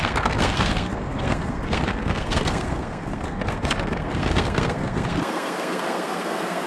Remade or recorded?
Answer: remade